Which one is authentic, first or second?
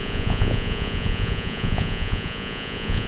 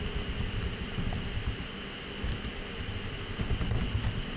second